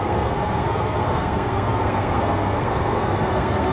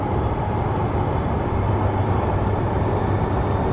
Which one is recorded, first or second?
second